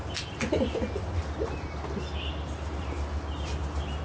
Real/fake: real